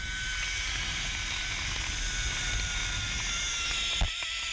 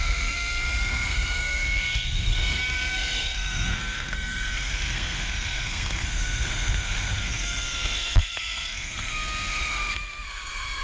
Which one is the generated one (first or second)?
second